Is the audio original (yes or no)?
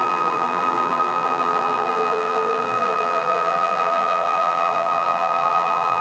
no